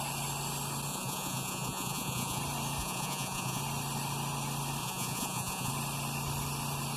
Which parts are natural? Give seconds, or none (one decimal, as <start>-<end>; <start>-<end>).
0.0-0.9; 2.4-2.8; 3.6-4.8; 5.7-7.0